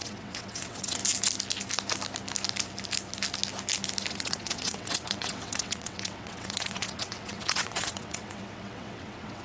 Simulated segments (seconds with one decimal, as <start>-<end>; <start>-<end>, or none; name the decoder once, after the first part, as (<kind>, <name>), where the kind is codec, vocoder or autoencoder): 0.0-1.0 (vocoder, WaveNeXt); 4.1-9.4